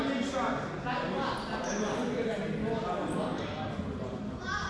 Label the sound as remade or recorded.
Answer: recorded